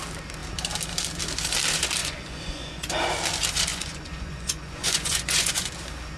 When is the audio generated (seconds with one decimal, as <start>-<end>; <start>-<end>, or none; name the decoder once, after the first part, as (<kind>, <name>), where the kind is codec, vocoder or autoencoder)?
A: 2.0-2.9 (vocoder, Vocos); 3.7-5.7